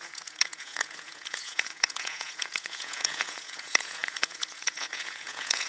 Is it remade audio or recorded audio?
remade